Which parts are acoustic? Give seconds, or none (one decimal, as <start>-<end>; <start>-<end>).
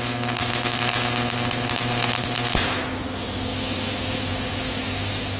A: 0.0-5.4